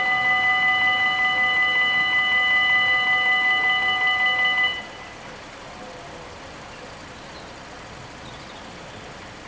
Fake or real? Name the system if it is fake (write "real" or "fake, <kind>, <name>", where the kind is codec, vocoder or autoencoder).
real